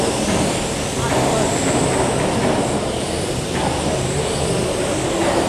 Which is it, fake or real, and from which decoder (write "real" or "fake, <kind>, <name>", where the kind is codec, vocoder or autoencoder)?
real